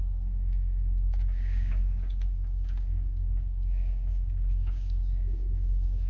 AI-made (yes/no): yes